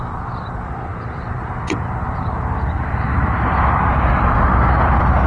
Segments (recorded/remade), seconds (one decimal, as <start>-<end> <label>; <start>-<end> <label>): 0.0-5.3 recorded